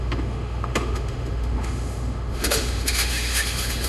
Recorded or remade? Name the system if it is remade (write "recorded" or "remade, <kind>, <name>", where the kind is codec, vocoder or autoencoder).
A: remade, autoencoder, DAC-VAE